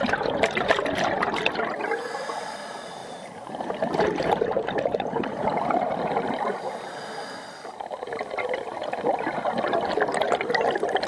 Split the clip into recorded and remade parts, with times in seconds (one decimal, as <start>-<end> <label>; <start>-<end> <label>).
0.0-3.0 recorded; 3.0-6.7 remade; 6.7-11.1 recorded